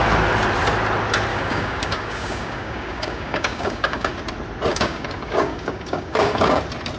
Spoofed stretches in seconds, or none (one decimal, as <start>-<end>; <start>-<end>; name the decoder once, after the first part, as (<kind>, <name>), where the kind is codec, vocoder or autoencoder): 1.3-4.1 (codec, DAC); 4.7-6.6